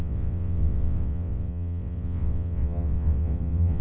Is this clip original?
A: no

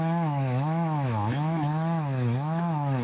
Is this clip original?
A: no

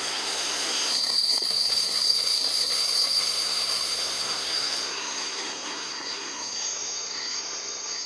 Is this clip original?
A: no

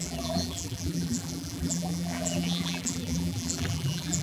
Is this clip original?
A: no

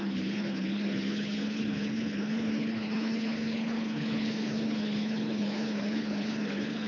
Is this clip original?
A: no